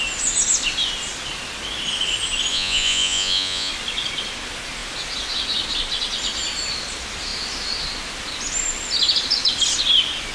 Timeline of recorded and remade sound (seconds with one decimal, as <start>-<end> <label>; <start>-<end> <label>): 0.0-2.5 recorded; 2.5-3.7 remade; 3.7-10.3 recorded